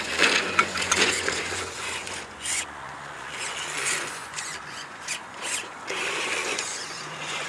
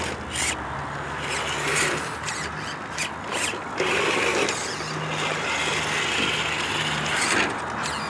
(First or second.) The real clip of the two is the second